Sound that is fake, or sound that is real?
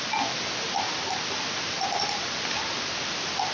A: real